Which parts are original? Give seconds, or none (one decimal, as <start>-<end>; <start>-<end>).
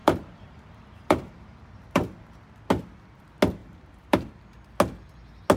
2.4-3.6; 4.3-5.6